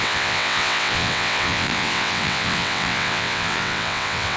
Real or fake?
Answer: fake